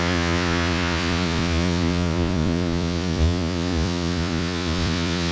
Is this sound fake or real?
fake